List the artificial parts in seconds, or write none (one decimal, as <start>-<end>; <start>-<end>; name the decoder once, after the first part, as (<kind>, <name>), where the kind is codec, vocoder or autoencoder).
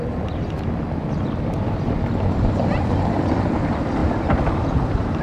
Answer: 4.0-5.2 (vocoder, BigVGAN v2)